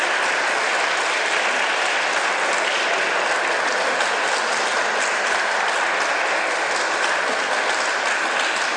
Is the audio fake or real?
real